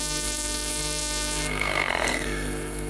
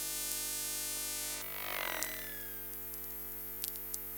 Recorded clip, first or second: second